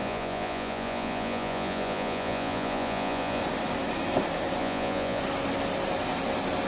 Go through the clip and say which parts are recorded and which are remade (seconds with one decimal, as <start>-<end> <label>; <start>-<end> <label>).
0.0-3.4 remade; 3.4-4.6 recorded; 4.6-5.2 remade; 5.2-6.7 recorded